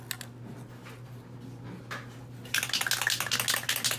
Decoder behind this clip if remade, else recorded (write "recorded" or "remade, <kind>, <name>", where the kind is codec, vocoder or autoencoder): recorded